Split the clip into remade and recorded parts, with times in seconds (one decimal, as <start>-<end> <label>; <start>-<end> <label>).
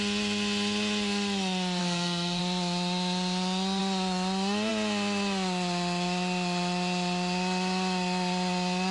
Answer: 0.0-1.8 recorded; 1.8-2.4 remade; 2.4-8.9 recorded